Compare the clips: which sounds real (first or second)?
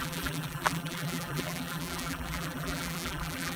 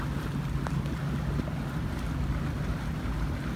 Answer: second